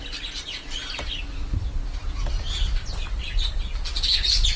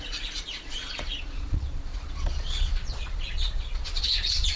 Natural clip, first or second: first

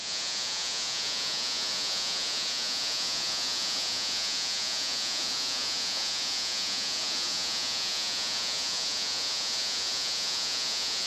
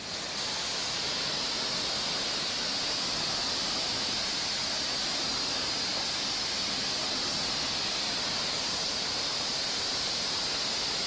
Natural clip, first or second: second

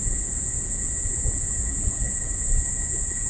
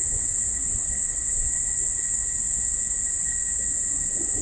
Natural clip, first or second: second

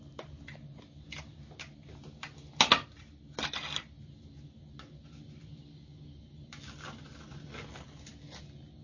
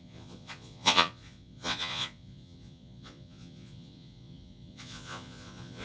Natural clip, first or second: first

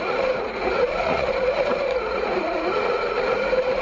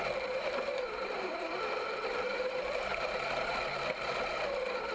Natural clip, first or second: second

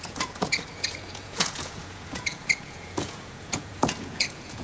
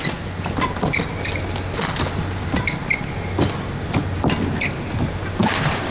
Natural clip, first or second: second